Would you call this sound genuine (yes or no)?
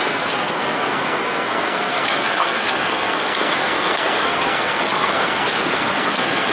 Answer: no